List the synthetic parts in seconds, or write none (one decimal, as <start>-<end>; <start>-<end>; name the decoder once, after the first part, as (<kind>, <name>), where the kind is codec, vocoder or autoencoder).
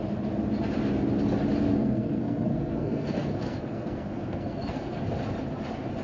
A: 1.7-5.0 (codec, SNAC)